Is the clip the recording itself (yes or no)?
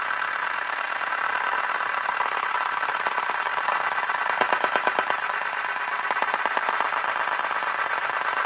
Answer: no